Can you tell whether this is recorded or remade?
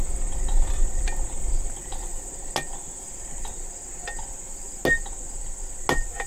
recorded